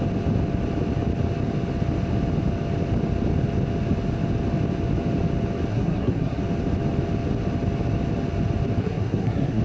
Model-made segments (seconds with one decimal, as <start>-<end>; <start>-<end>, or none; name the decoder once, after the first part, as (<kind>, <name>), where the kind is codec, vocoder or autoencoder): 5.7-6.4 (codec, SNAC); 8.8-9.6